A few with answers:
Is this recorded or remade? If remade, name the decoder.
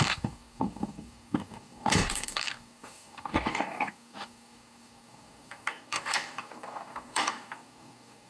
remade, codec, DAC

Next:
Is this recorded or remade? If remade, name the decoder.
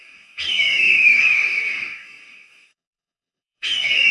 remade, codec, DAC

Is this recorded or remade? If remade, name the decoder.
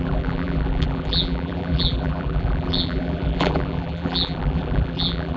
remade, vocoder, BigVGAN v2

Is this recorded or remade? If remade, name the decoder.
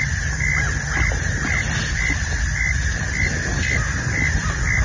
recorded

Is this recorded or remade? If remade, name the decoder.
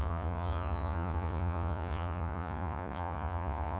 remade, vocoder, Vocos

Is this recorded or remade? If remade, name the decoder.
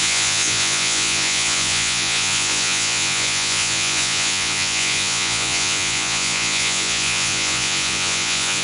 remade, vocoder, Vocos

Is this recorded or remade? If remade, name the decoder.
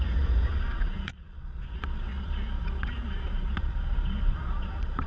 remade, vocoder, Vocos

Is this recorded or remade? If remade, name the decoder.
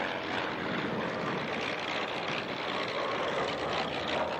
recorded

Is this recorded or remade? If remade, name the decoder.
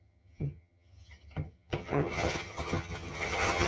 remade, vocoder, HiFi-GAN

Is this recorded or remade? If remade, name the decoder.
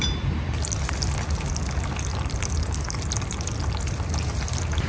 recorded